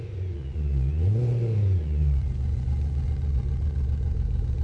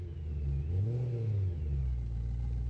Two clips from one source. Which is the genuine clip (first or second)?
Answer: second